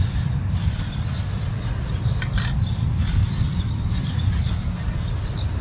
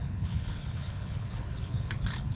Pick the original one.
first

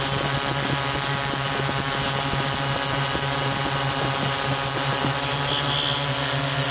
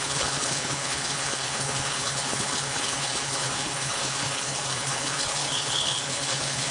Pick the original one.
first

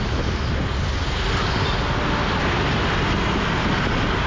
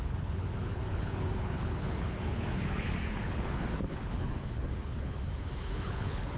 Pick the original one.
first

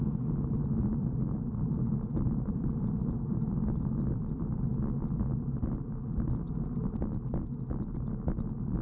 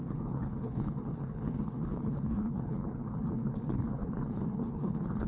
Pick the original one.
first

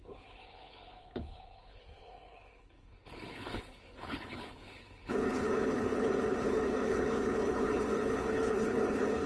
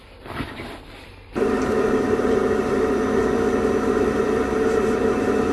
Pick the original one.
second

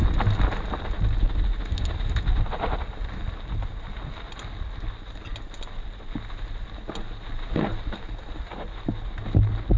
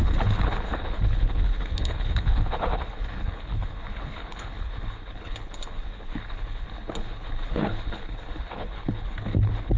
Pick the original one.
first